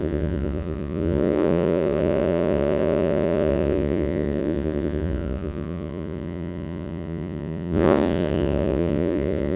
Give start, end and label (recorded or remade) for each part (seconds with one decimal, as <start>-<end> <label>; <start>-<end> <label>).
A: 0.0-9.6 remade